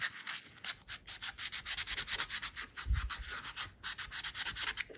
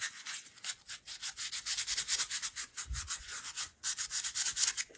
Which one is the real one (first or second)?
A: first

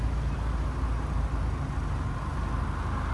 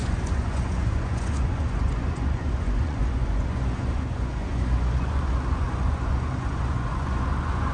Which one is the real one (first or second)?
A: first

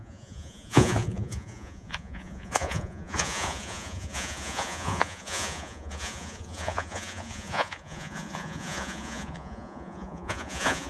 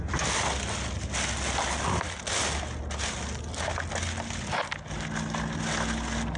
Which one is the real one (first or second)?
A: second